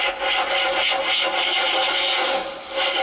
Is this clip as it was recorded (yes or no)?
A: yes